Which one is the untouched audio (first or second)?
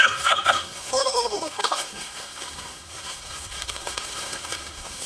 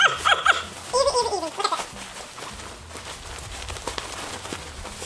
second